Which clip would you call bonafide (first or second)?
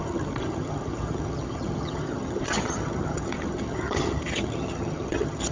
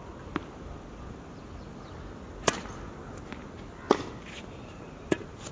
second